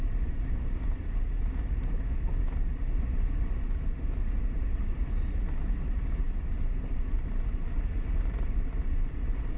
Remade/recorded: remade